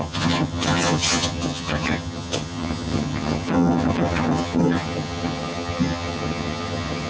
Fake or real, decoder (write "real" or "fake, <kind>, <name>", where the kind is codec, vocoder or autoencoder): fake, vocoder, HiFi-GAN